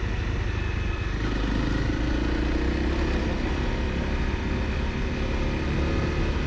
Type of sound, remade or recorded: recorded